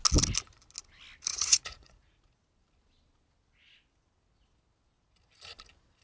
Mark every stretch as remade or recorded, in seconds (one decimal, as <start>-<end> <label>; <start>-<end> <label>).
0.0-1.3 recorded; 1.3-2.3 remade; 2.3-6.0 recorded